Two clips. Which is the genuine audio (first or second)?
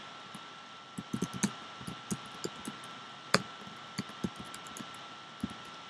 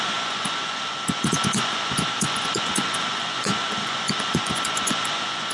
first